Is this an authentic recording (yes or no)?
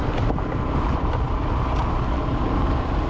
yes